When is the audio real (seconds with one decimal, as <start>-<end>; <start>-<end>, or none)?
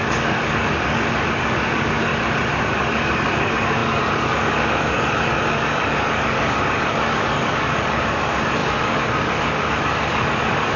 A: 2.1-2.6